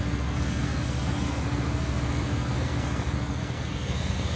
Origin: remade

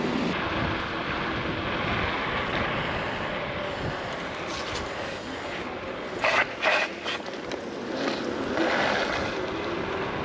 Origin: recorded